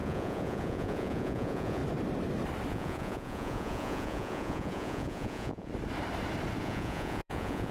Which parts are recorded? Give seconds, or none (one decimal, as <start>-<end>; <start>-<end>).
1.8-2.7; 5.7-6.6